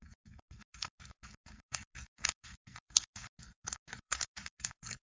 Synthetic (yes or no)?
yes